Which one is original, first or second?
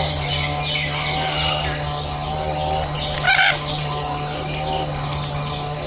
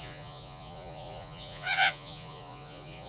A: first